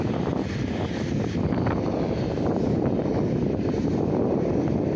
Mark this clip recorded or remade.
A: recorded